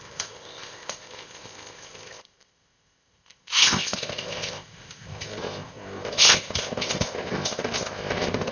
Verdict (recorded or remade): remade